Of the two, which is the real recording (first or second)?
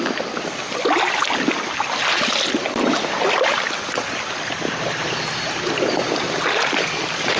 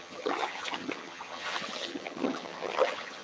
first